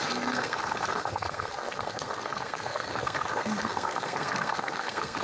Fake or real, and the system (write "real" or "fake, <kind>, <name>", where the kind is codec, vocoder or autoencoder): fake, codec, SNAC